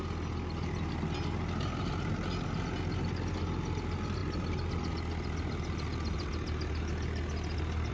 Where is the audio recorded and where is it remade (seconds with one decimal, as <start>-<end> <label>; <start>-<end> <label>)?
0.0-7.9 recorded